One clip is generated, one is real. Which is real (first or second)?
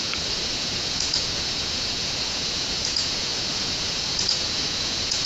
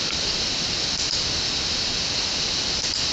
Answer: second